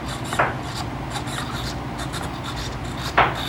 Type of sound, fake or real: real